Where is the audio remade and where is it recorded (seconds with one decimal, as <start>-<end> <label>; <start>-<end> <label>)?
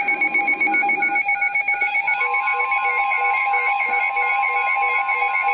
0.0-0.8 recorded; 0.8-2.6 remade; 2.6-3.4 recorded; 3.4-4.0 remade; 4.0-5.5 recorded